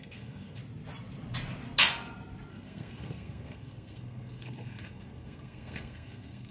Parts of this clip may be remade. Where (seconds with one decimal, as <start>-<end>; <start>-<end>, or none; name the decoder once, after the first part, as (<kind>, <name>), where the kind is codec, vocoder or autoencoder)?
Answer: 0.0-0.6 (codec, SNAC); 2.5-6.5